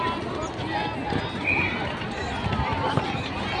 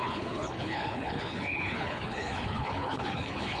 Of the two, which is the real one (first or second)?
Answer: first